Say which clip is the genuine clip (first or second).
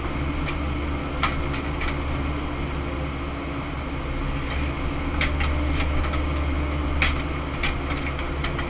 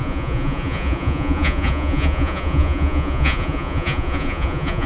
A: first